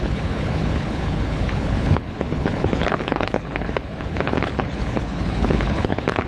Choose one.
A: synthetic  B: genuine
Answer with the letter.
A